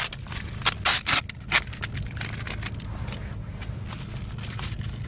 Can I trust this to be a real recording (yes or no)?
yes